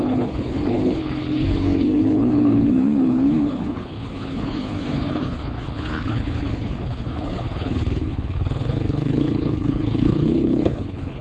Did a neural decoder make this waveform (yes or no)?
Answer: yes